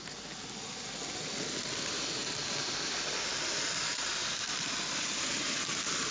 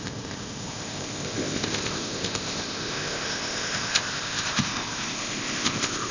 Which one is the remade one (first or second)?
second